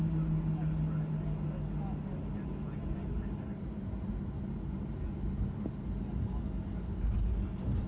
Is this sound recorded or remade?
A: recorded